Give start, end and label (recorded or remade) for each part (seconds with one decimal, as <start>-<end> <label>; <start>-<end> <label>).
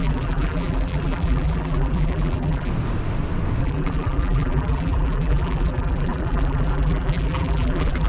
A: 0.0-2.7 remade; 2.7-3.6 recorded; 3.6-8.1 remade